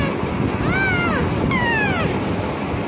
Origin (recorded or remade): recorded